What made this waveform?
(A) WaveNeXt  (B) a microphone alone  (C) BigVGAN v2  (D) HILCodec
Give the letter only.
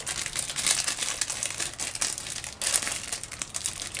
B